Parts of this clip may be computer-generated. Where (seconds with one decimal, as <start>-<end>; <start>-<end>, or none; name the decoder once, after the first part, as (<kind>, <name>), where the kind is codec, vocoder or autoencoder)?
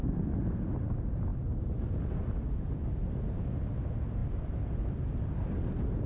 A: none